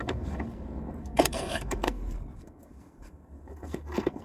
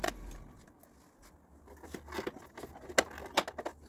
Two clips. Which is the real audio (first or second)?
second